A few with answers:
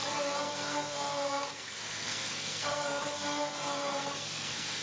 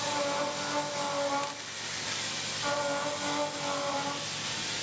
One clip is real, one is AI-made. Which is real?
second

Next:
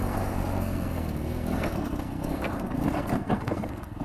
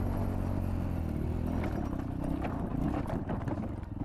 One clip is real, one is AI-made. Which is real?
second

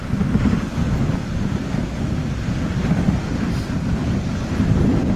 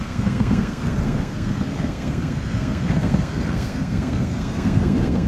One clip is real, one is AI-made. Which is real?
first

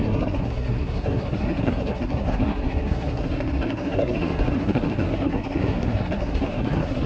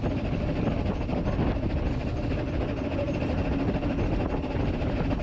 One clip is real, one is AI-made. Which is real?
second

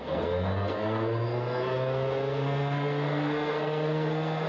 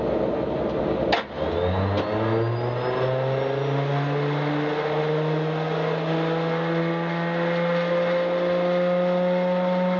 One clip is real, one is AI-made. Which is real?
second